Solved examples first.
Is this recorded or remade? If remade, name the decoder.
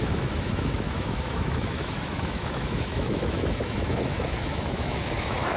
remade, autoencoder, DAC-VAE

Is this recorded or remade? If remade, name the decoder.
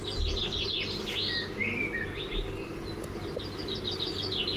recorded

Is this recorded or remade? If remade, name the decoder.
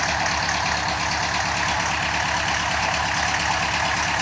recorded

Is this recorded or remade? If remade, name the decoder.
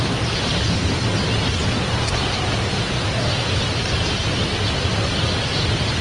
recorded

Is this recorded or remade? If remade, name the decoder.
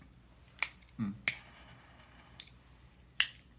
recorded